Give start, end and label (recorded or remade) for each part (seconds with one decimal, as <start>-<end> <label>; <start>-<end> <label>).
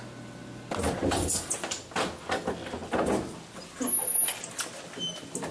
0.0-5.5 recorded